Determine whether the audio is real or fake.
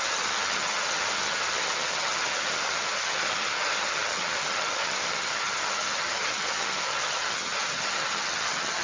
fake